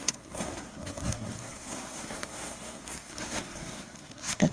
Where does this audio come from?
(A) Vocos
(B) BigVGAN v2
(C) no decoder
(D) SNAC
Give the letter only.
D